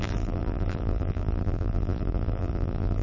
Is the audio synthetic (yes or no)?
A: yes